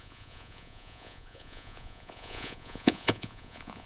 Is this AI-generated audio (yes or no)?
yes